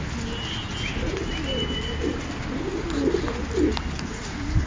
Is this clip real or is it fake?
real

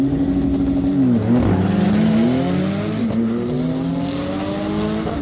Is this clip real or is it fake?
real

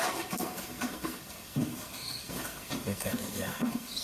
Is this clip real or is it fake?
fake